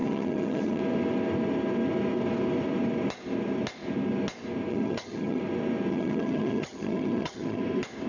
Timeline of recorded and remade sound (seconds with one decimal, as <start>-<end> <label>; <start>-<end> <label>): 0.0-0.8 remade; 0.8-4.7 recorded; 4.7-5.4 remade; 5.4-5.9 recorded; 5.9-7.6 remade; 7.6-8.1 recorded